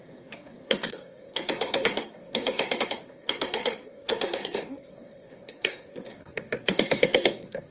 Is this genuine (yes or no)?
no